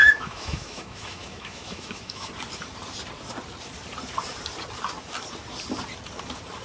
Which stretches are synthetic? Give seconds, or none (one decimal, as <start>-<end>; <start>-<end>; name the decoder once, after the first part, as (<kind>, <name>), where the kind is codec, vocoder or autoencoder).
0.0-2.3 (autoencoder, DAC-VAE)